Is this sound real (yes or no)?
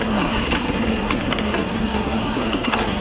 no